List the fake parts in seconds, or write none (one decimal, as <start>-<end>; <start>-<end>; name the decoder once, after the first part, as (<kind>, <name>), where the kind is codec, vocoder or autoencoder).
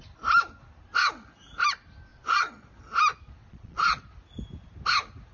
2.1-2.7 (vocoder, Vocos); 3.4-4.1